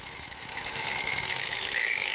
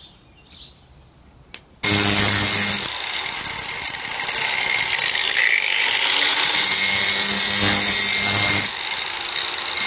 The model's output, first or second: first